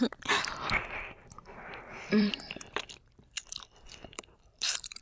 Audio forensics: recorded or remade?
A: remade